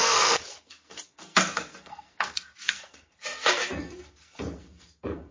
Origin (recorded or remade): remade